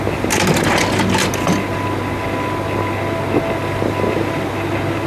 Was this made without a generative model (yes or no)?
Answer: yes